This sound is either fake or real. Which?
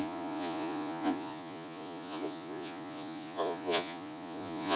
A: fake